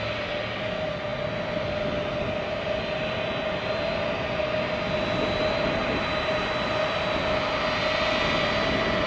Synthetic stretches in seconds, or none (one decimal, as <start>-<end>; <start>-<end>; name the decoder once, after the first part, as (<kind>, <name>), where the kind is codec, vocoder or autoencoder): 5.8-6.7 (vocoder, BigVGAN v2)